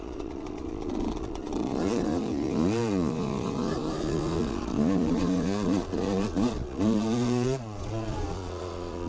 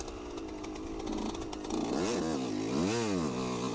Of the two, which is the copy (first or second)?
first